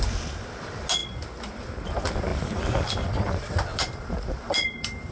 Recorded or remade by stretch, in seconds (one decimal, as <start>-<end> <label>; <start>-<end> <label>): 0.0-5.1 recorded